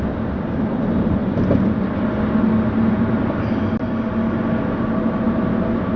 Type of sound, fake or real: real